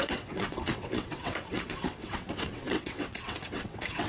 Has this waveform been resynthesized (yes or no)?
yes